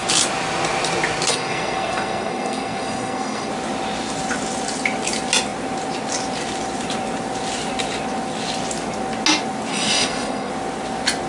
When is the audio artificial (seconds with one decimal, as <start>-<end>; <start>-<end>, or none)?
1.3-3.5; 9.7-10.5

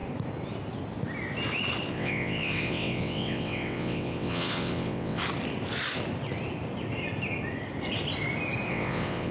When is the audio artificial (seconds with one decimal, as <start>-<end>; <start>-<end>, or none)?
1.9-5.2; 8.7-9.3

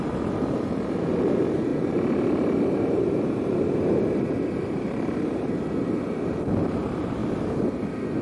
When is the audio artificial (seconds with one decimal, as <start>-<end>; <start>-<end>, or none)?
0.0-7.2

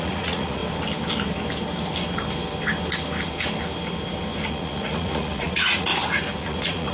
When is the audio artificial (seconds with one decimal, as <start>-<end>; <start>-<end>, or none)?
0.0-0.6; 4.5-5.9; 6.4-6.9

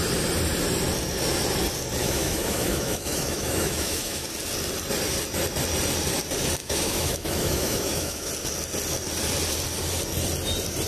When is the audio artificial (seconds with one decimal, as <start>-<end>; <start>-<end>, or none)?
2.0-4.3; 6.6-8.3